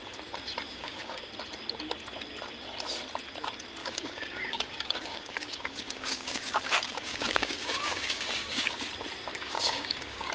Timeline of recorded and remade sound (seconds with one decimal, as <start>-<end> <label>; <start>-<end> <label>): 0.0-0.7 recorded; 0.7-1.3 remade; 1.3-3.8 recorded; 3.8-8.8 remade; 8.8-9.3 recorded; 9.3-10.3 remade